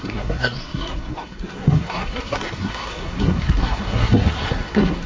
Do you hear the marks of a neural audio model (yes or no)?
yes